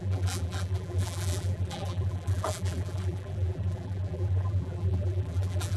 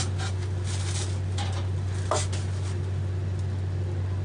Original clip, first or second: second